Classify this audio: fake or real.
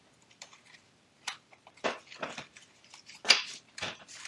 fake